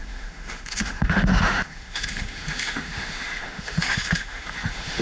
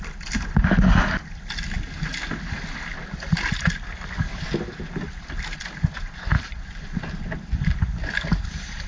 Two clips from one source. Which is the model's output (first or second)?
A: first